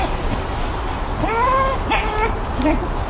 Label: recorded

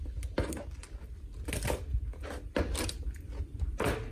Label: recorded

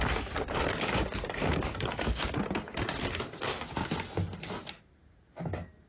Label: recorded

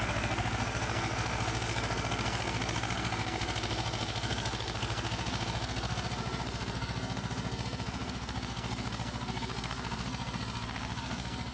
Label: remade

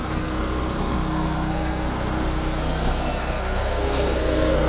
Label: remade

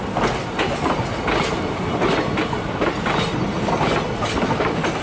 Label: recorded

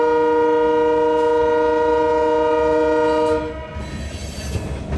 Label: recorded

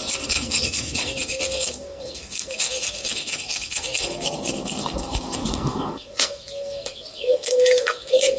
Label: remade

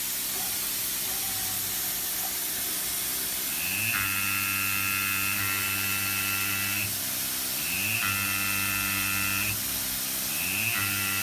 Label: recorded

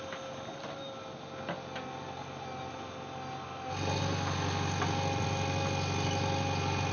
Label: recorded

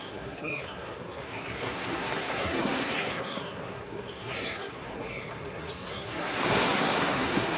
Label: remade